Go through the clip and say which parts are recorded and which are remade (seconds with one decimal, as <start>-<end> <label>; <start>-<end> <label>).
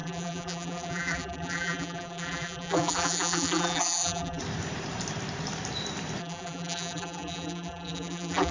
0.0-4.4 remade; 4.4-6.2 recorded; 6.2-8.5 remade